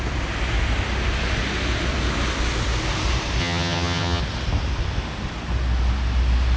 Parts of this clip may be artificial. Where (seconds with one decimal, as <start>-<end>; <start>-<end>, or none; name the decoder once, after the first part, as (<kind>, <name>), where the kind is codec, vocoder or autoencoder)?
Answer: 3.4-4.2 (vocoder, HiFi-GAN)